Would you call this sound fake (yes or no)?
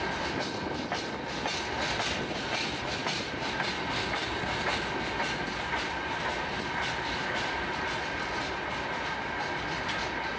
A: no